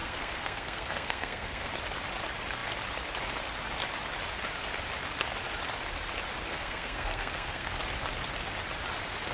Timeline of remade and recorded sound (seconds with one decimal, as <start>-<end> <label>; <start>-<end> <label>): 0.0-1.7 remade; 1.7-6.5 recorded; 6.5-7.7 remade; 7.7-9.3 recorded